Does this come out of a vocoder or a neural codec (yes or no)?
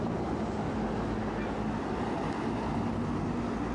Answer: no